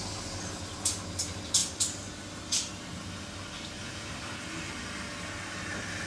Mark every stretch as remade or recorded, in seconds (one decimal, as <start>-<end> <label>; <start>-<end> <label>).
0.0-6.1 recorded